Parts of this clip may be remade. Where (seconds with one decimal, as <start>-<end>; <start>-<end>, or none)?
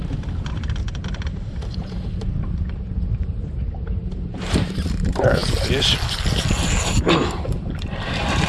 0.0-5.4; 6.5-8.5